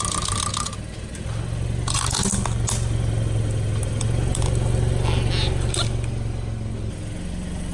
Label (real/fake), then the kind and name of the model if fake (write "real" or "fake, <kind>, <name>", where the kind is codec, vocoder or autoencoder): real